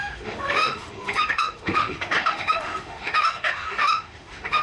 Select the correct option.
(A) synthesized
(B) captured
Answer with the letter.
A